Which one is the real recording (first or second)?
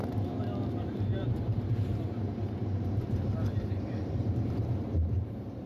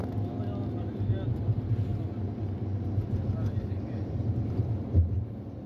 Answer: second